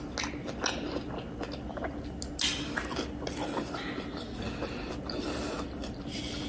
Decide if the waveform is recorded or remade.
recorded